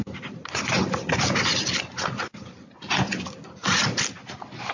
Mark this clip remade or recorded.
recorded